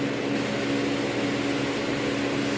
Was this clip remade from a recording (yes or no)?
no